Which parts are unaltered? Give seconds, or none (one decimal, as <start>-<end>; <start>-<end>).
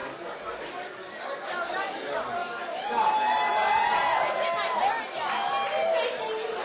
0.0-0.7; 2.4-6.6